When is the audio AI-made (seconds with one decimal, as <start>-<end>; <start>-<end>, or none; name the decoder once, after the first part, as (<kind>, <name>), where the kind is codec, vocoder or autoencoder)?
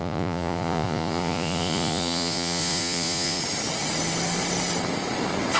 0.0-3.4 (vocoder, Vocos)